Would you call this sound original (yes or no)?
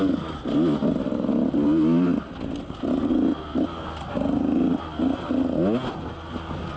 yes